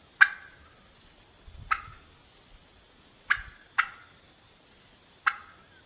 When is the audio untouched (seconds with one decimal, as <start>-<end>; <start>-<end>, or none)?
0.0-5.9